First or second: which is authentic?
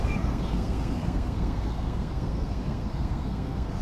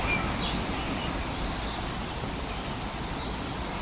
second